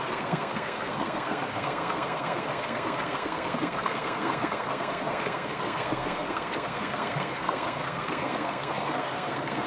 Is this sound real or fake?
fake